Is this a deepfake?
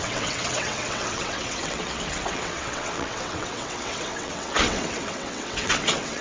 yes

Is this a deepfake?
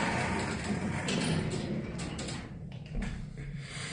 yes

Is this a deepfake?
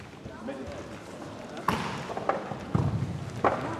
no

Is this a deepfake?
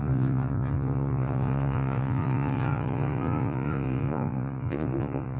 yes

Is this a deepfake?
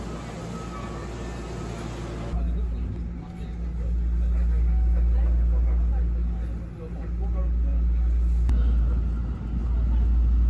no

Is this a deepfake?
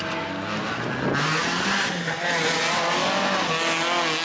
no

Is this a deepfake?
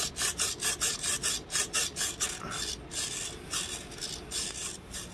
no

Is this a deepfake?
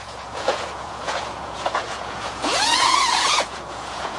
yes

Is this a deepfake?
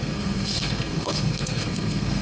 yes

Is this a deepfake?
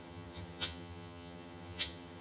yes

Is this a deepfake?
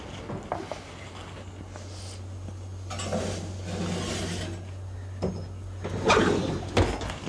no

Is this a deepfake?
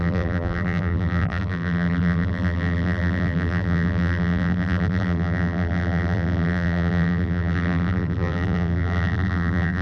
yes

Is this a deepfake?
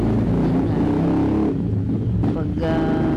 no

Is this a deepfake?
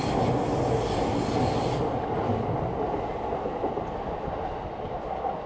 no